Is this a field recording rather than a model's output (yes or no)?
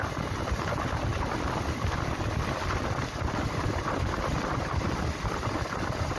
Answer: yes